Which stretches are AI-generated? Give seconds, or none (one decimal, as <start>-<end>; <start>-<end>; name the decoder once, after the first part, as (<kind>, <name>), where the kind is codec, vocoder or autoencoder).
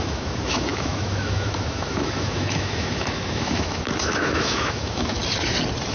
0.0-5.2 (autoencoder, DAC-VAE)